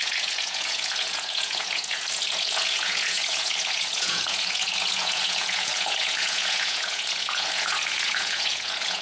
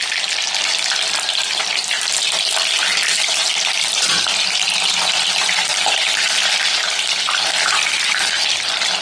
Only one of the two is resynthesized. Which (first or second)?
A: first